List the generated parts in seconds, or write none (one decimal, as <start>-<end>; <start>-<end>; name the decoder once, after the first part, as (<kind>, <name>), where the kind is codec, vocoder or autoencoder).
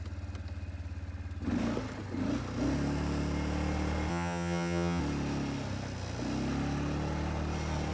4.1-5.0 (vocoder, HiFi-GAN)